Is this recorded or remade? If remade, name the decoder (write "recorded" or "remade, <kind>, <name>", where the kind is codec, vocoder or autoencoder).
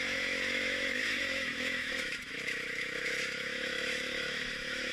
remade, autoencoder, DAC-VAE